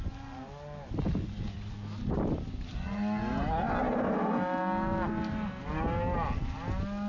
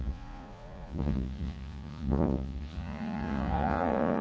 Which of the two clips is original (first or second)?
first